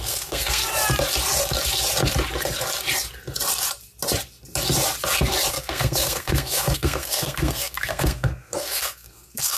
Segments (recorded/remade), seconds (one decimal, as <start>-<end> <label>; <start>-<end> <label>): 0.0-0.6 remade; 0.6-5.5 recorded; 5.5-9.6 remade